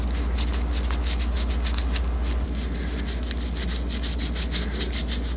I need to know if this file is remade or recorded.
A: recorded